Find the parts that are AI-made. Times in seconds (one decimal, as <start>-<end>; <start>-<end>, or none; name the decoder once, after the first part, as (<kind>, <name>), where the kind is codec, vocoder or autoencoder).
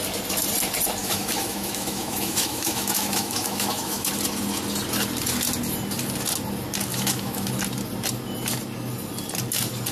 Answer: 1.0-4.1 (autoencoder, DAC-VAE); 6.9-7.5